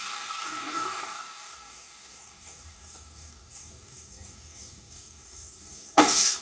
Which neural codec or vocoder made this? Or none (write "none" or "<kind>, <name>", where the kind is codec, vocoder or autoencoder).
codec, DAC